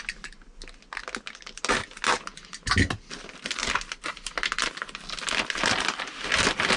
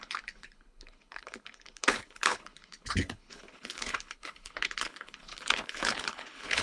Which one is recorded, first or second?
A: first